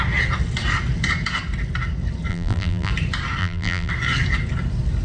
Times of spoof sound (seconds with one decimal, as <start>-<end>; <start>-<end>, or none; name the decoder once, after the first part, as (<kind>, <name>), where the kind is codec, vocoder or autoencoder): 2.3-2.9 (vocoder, BigVGAN v2); 3.4-3.9